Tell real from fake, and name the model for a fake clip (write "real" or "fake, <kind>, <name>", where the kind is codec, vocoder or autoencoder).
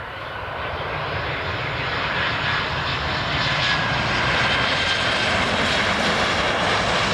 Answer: real